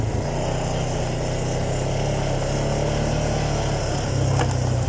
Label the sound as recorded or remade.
recorded